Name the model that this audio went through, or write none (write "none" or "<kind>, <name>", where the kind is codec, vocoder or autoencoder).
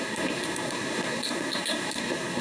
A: codec, SNAC